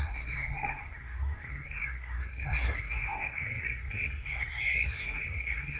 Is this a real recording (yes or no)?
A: no